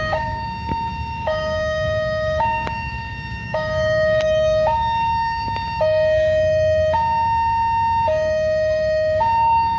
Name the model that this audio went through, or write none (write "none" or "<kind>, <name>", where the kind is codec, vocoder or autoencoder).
codec, DAC